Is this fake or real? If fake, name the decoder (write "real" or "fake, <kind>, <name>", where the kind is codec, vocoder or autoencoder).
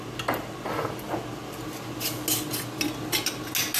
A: real